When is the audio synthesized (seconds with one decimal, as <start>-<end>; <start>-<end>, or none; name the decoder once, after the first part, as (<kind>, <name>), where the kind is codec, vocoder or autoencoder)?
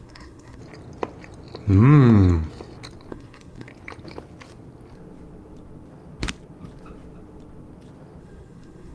0.0-0.6 (codec, SNAC); 3.1-3.7; 8.2-8.9